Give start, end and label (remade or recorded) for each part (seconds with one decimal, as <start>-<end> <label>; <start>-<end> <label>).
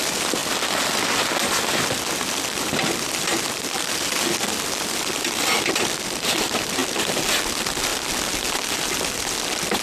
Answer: 0.0-0.4 remade; 0.4-2.1 recorded; 2.1-7.9 remade; 7.9-8.5 recorded; 8.5-9.8 remade